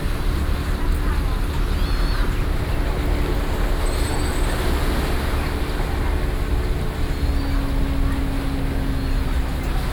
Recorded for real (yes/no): yes